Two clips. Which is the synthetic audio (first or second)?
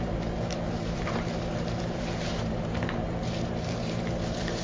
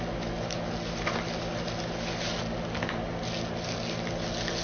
first